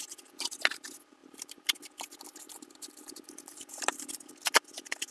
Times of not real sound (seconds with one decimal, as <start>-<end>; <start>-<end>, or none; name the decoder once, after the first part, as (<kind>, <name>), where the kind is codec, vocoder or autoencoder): 1.2-4.3 (vocoder, BigVGAN v2)